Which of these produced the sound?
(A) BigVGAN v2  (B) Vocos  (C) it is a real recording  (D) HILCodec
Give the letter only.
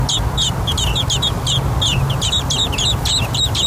A